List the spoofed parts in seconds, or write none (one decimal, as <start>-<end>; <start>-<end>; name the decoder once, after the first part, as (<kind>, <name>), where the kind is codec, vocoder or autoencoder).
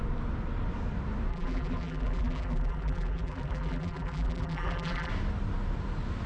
1.3-5.1 (vocoder, BigVGAN v2)